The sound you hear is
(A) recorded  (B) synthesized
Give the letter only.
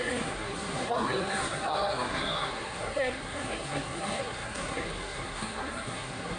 B